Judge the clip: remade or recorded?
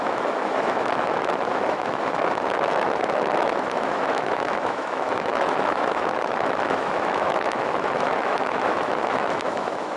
remade